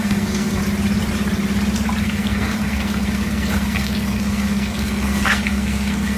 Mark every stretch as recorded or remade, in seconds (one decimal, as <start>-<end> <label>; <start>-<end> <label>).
0.0-0.6 remade; 0.6-2.0 recorded; 2.0-6.2 remade

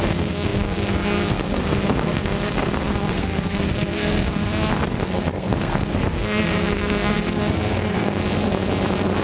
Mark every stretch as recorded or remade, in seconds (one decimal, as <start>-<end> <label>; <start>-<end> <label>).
0.0-8.2 remade; 8.2-9.2 recorded

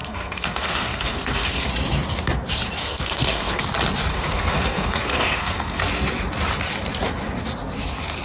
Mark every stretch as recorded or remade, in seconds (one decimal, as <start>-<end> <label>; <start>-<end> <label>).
0.0-1.7 remade; 1.7-2.8 recorded; 2.8-3.6 remade; 3.6-4.1 recorded; 4.1-5.8 remade; 5.8-8.2 recorded

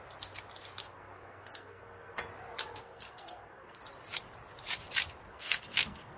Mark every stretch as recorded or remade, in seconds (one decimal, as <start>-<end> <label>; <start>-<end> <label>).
0.0-0.8 recorded; 0.8-2.2 remade; 2.2-2.8 recorded; 2.8-3.8 remade; 3.8-5.3 recorded; 5.3-6.2 remade

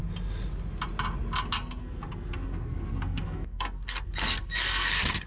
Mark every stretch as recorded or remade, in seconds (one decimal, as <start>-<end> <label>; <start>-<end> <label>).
0.0-1.8 recorded; 1.8-5.3 remade